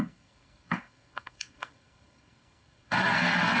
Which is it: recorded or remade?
remade